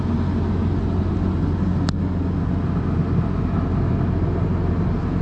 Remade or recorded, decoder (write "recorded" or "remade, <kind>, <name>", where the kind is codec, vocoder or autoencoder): recorded